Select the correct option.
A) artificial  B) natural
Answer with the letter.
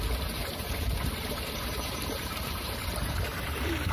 A